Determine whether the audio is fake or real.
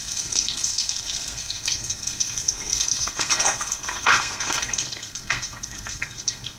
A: fake